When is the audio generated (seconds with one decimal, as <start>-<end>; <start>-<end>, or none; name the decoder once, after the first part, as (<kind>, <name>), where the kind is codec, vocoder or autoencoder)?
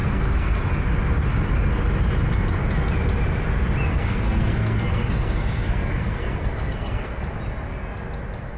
0.0-0.6 (codec, SNAC); 3.9-7.2